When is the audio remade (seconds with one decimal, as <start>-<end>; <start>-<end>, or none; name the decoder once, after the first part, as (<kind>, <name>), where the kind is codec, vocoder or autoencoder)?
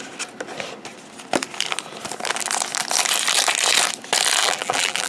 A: 4.4-5.1 (vocoder, BigVGAN v2)